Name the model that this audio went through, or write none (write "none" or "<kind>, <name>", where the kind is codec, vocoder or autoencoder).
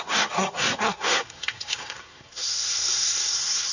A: codec, SNAC